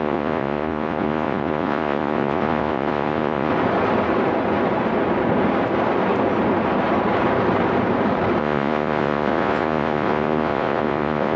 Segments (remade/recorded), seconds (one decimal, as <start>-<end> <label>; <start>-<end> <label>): 0.0-3.5 remade; 3.5-8.4 recorded; 8.4-11.4 remade